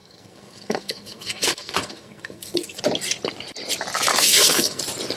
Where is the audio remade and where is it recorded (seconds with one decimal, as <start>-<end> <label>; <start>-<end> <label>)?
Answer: 0.0-2.8 remade; 2.8-4.1 recorded; 4.1-4.8 remade; 4.8-5.2 recorded